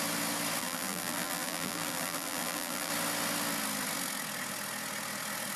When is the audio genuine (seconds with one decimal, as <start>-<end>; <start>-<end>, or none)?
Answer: 0.0-0.6; 2.9-5.6